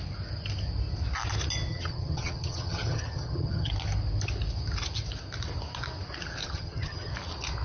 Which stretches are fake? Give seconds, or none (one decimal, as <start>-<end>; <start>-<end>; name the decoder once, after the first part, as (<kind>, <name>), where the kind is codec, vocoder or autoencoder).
1.7-3.7 (vocoder, HiFi-GAN); 6.4-7.1